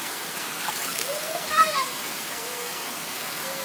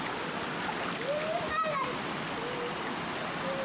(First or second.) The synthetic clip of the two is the first